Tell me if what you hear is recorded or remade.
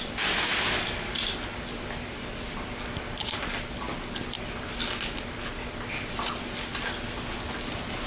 recorded